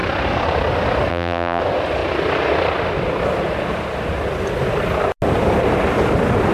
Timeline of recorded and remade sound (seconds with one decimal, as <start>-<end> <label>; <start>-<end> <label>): 0.0-1.1 recorded; 1.1-1.6 remade; 1.6-6.5 recorded